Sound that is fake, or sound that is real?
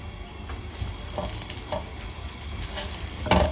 real